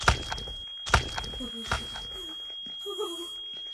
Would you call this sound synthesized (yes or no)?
no